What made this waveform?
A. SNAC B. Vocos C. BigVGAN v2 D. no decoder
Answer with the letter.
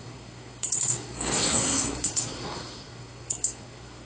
A